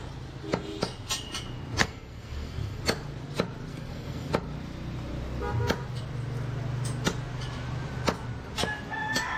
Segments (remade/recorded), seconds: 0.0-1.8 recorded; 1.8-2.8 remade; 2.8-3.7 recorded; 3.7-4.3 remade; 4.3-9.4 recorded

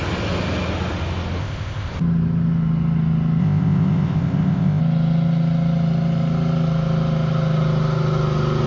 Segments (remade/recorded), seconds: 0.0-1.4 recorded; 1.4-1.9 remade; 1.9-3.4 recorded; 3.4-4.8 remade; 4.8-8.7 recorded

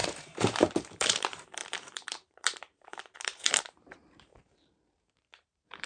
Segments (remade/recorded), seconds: 0.0-5.9 remade

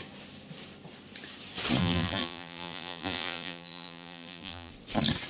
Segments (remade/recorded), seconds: 0.0-1.8 recorded; 1.8-4.7 remade; 4.7-5.3 recorded

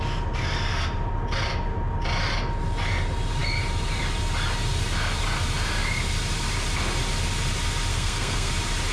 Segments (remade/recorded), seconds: 0.0-7.9 recorded; 7.9-8.5 remade; 8.5-8.9 recorded

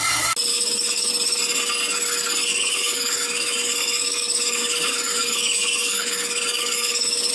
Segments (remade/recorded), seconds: 0.0-0.5 recorded; 0.5-1.1 remade; 1.1-2.5 recorded; 2.5-7.3 remade